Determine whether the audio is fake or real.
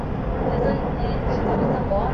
real